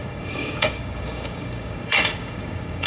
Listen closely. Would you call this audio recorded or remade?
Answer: remade